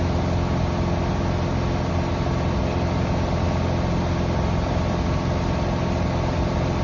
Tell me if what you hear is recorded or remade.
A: recorded